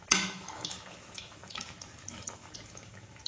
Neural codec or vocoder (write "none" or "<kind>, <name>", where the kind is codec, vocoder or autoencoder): autoencoder, DAC-VAE